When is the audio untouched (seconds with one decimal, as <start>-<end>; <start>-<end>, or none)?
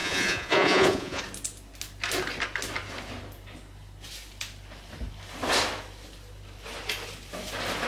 1.2-7.9